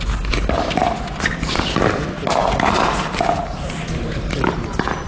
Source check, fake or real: real